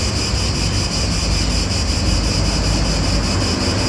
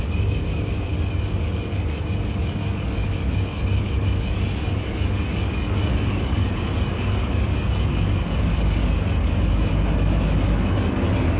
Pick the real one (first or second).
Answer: first